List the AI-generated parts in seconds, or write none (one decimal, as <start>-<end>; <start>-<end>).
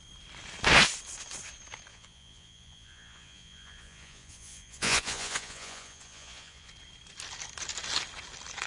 1.9-6.7